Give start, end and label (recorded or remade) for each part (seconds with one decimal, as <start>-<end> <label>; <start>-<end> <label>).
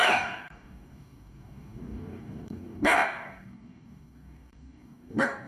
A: 0.0-5.5 remade